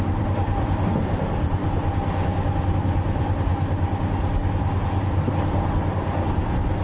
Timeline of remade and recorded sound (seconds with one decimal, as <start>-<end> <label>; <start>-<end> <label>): 0.0-1.6 remade; 1.6-2.6 recorded; 2.6-3.5 remade; 3.5-5.7 recorded; 5.7-6.8 remade